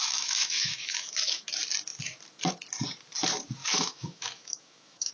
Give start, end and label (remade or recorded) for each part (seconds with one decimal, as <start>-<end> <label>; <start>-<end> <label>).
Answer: 0.0-1.5 remade; 1.5-3.6 recorded; 3.6-5.1 remade